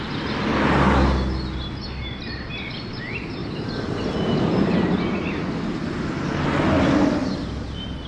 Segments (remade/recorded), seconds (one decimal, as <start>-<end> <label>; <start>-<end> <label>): 0.0-3.4 recorded; 3.4-4.0 remade; 4.0-8.1 recorded